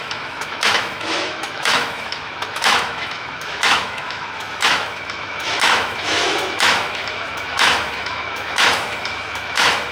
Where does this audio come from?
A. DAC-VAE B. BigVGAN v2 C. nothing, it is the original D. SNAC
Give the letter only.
A